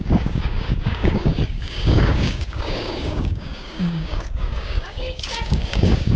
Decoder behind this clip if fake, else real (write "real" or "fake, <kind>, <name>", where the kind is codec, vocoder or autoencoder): fake, codec, DAC